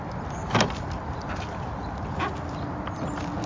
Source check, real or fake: real